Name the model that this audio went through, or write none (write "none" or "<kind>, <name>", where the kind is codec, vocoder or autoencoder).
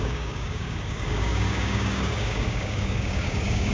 codec, DAC